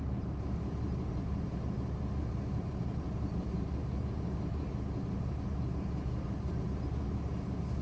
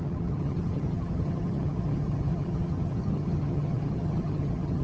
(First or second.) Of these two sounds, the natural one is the first